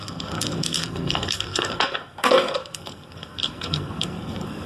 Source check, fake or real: fake